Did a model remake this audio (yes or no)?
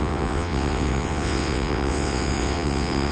yes